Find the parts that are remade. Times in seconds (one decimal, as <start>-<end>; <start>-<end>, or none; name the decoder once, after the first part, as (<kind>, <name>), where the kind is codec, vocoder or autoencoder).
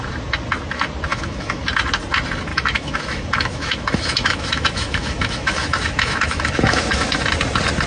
1.1-1.6 (autoencoder, DAC-VAE); 2.5-7.2